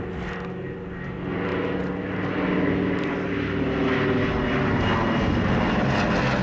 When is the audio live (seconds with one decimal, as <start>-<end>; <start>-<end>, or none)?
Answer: 0.0-6.4

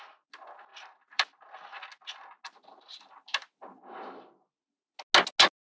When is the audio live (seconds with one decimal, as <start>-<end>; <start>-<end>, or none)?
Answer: 0.0-0.7; 1.8-3.8; 4.7-5.7